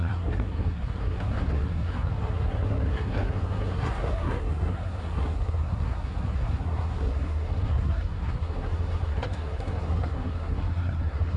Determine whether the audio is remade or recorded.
remade